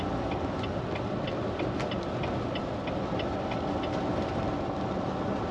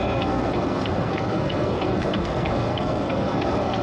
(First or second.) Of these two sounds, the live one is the first